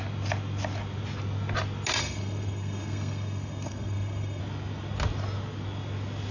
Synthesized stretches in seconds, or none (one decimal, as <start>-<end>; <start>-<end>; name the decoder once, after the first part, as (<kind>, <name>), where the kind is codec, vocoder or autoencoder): 2.0-4.4 (codec, SNAC)